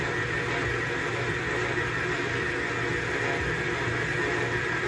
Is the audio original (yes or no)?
yes